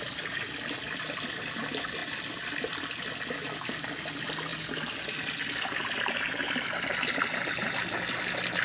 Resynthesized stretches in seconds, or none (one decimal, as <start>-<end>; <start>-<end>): none